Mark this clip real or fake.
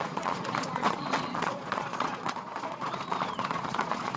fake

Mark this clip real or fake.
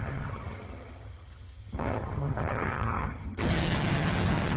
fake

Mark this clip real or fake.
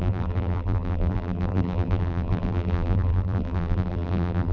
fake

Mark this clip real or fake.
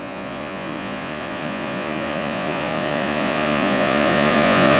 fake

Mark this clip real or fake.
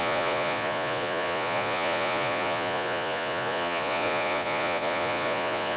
fake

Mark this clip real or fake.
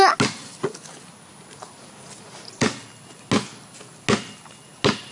real